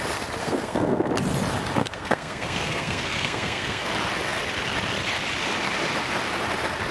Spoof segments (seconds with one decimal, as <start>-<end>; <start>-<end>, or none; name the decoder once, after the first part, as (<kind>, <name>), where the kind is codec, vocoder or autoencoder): 0.4-1.1 (codec, SNAC); 1.8-3.9

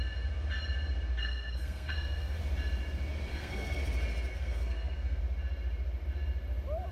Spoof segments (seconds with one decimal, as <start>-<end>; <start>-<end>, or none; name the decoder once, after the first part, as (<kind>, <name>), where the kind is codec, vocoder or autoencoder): 1.2-2.4 (codec, SNAC); 3.3-3.8; 4.3-5.2

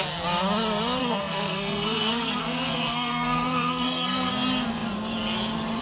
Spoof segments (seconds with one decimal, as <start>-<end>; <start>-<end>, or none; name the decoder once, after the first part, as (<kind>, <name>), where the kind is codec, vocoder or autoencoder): 1.0-4.3 (codec, SNAC)

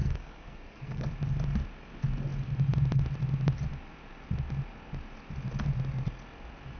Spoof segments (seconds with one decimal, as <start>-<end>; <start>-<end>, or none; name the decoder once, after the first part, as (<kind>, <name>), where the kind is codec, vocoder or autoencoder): 0.0-1.1 (codec, SNAC)